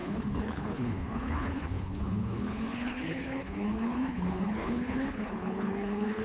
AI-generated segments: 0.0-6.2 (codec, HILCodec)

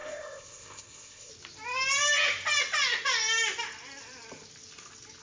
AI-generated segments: 0.0-1.3 (codec, ZipCodec)

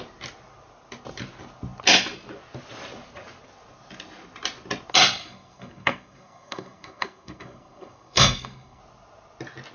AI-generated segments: 5.2-8.8 (codec, SNAC)

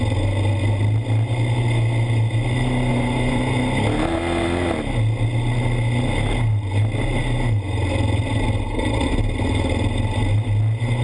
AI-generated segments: 2.9-3.4 (vocoder, Vocos)